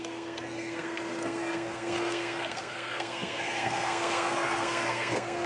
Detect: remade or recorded remade